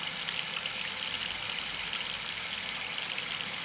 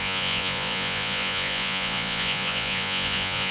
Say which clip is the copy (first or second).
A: second